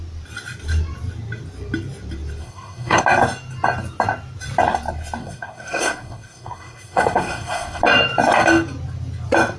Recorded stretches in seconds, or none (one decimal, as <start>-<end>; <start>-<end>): 0.0-2.4; 3.0-5.2; 7.8-9.6